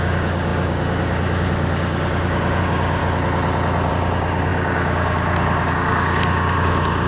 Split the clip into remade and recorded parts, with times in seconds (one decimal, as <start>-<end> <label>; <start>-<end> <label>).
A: 0.0-3.0 remade; 3.0-3.9 recorded; 3.9-7.1 remade